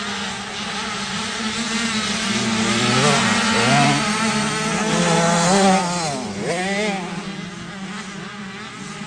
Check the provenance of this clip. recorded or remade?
recorded